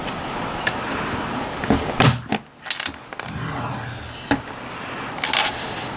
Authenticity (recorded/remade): recorded